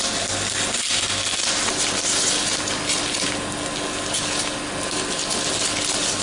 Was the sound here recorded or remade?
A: recorded